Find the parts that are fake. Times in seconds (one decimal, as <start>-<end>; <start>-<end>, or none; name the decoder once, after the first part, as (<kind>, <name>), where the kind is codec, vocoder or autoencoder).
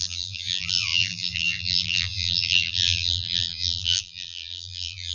0.0-5.1 (vocoder, BigVGAN v2)